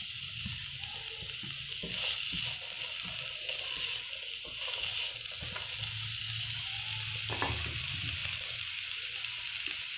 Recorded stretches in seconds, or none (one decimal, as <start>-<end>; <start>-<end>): 0.0-10.0